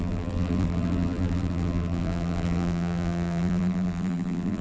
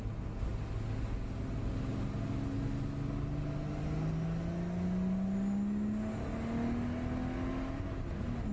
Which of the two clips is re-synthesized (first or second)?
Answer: first